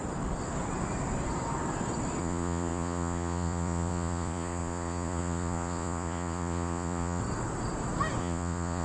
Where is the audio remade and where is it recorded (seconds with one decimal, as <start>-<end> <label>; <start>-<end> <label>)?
0.0-2.2 recorded; 2.2-7.2 remade; 7.2-8.2 recorded; 8.2-8.8 remade